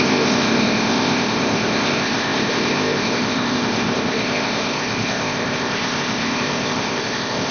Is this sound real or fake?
fake